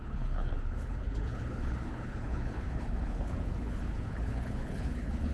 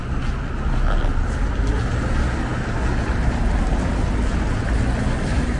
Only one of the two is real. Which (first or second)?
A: second